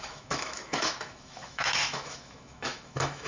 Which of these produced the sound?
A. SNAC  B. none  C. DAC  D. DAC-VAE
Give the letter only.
D